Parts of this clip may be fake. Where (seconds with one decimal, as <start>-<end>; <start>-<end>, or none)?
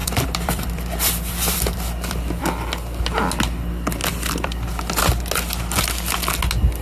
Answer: 0.0-2.4; 4.0-5.0